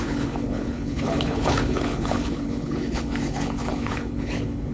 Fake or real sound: fake